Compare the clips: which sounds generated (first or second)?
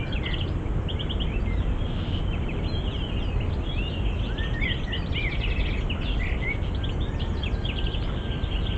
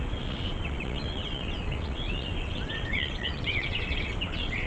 second